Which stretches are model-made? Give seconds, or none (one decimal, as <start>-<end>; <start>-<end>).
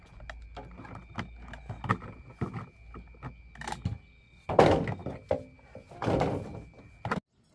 none